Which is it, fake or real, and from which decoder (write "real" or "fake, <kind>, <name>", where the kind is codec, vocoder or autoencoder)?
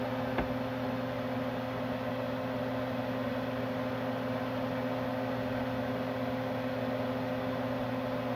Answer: real